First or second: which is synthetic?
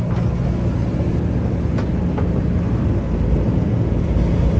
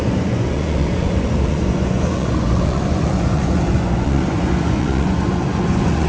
second